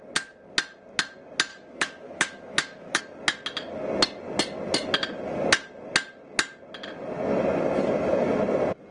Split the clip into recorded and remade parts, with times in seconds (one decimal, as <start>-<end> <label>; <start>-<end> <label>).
0.0-1.5 recorded; 1.5-3.0 remade; 3.0-8.9 recorded